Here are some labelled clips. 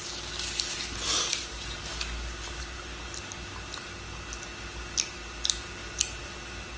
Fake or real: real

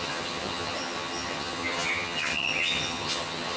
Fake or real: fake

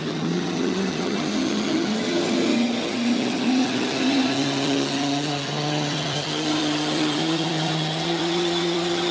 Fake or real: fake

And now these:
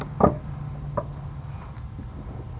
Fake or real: real